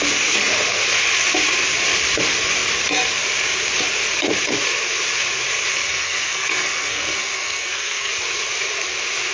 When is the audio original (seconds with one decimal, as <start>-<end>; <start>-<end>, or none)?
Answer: 0.0-5.7; 8.1-9.3